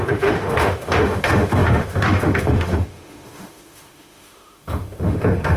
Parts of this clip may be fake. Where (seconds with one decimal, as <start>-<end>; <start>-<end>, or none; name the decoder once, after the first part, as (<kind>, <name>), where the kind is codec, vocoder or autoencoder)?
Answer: 0.0-5.6 (autoencoder, DAC-VAE)